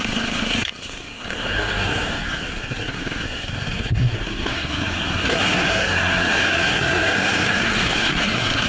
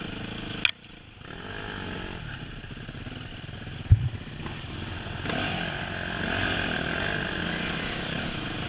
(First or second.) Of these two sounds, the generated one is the first